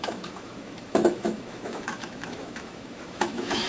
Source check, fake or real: fake